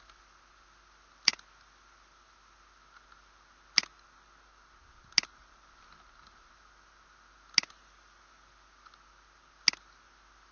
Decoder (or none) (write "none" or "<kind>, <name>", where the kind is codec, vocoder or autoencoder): none